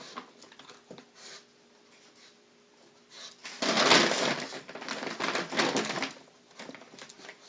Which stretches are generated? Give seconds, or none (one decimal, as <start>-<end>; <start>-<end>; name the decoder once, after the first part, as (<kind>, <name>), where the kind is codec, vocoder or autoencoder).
none